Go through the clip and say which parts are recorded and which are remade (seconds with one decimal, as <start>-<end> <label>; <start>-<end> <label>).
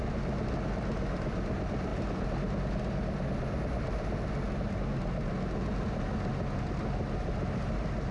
0.0-8.1 recorded